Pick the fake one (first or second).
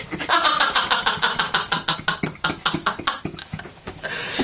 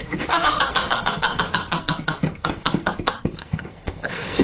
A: second